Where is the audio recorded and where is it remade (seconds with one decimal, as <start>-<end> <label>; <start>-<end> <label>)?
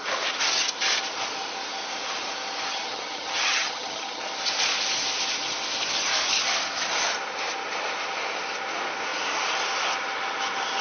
0.0-2.7 recorded; 2.7-4.2 remade; 4.2-10.8 recorded